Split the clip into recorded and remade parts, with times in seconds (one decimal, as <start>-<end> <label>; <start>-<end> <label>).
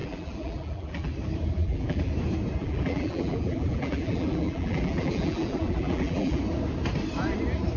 0.0-1.1 remade; 1.1-1.6 recorded; 1.6-2.1 remade; 2.1-2.6 recorded; 2.6-6.4 remade; 6.4-7.8 recorded